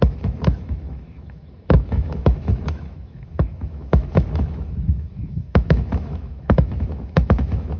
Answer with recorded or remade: remade